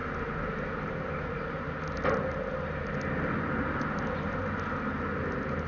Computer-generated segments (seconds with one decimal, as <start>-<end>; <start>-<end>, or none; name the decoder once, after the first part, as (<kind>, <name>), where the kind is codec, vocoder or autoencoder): none